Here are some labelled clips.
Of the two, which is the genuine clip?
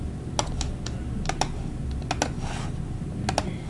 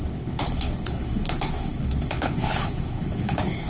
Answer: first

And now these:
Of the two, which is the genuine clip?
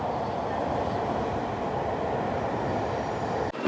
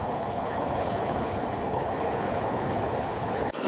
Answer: first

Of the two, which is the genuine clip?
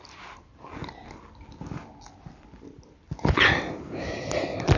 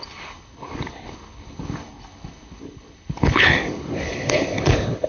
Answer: first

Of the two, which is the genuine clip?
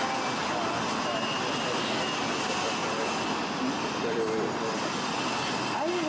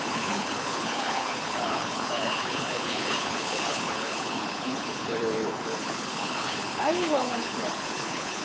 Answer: first